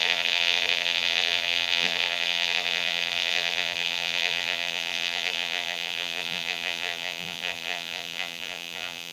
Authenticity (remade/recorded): remade